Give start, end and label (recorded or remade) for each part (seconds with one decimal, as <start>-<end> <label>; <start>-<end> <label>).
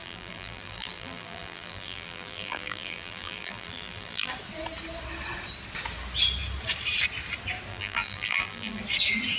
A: 0.0-4.3 remade; 4.3-7.7 recorded; 7.7-8.8 remade; 8.8-9.4 recorded